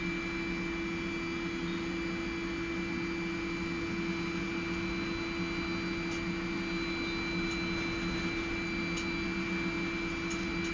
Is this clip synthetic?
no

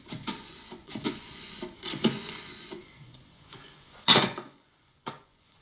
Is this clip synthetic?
yes